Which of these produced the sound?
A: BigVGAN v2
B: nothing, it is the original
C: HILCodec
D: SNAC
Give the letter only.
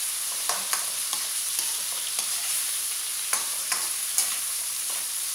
A